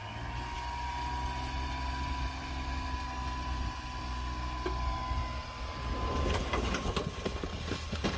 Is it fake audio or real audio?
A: real